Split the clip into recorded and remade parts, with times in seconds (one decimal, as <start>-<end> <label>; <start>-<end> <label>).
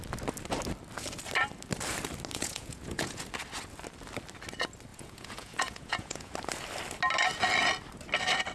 0.0-2.3 recorded; 2.3-3.2 remade; 3.2-4.9 recorded; 4.9-6.3 remade; 6.3-8.5 recorded